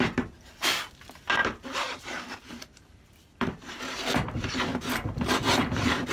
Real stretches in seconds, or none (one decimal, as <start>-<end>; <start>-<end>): 0.0-1.4; 3.8-4.7; 5.5-6.1